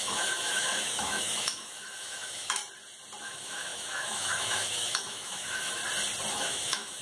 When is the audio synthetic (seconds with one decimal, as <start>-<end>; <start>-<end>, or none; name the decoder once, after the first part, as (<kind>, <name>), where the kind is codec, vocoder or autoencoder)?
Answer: 0.0-2.6 (autoencoder, DAC-VAE); 3.2-5.8; 6.3-7.0

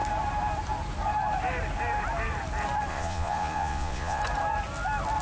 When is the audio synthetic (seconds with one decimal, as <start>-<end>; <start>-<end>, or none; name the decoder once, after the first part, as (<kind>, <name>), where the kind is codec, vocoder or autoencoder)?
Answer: 2.9-4.2 (vocoder, Vocos)

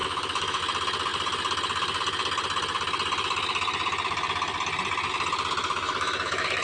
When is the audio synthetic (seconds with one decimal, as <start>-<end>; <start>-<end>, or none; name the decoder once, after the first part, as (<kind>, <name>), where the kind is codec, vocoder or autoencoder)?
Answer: 0.0-0.6 (autoencoder, DAC-VAE); 5.6-6.6

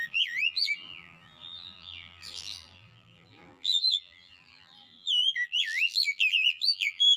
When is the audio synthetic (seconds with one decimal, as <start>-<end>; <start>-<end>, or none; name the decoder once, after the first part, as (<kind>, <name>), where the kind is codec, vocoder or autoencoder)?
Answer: 0.0-7.2 (vocoder, BigVGAN v2)